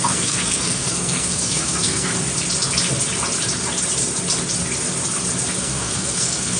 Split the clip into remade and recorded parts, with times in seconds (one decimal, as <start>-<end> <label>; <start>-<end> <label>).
0.0-2.1 remade; 2.1-5.6 recorded; 5.6-6.6 remade